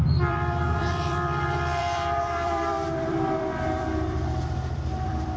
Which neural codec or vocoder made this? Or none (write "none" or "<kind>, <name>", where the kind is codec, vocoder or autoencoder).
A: vocoder, BigVGAN v2